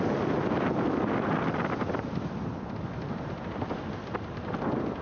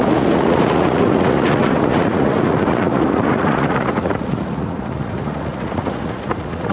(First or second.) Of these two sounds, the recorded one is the first